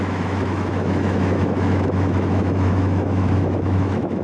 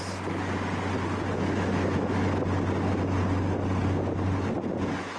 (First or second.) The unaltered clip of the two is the second